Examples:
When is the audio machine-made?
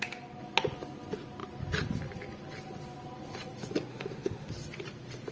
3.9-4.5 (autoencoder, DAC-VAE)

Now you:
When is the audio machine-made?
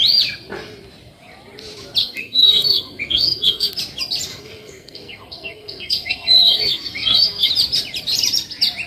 2.0-3.7 (codec, SNAC); 4.3-7.5